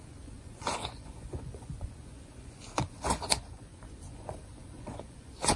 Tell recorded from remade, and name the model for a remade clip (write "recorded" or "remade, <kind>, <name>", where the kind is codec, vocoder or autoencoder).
remade, vocoder, Vocos